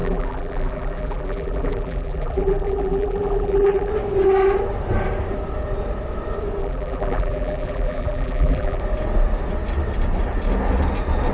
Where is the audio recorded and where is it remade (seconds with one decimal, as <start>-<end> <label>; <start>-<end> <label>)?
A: 0.0-3.9 remade; 3.9-6.6 recorded; 6.6-8.8 remade; 8.8-11.3 recorded